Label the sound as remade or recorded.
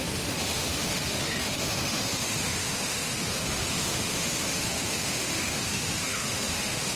remade